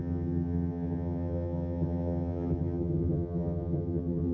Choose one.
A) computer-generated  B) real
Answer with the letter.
A